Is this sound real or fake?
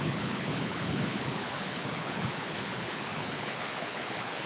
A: fake